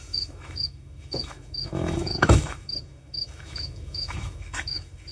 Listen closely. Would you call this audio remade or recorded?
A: remade